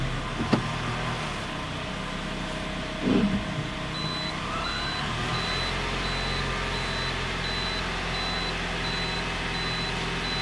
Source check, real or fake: real